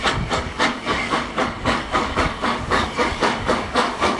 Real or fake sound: fake